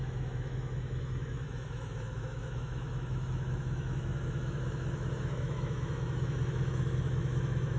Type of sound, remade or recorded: remade